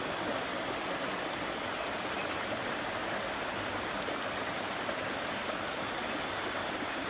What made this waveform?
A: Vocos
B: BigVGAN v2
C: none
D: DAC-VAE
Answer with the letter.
C